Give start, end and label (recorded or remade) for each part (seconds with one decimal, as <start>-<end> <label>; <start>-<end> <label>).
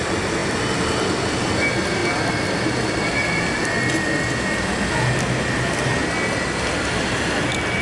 0.0-7.8 recorded